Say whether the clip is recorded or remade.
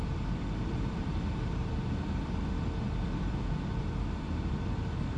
remade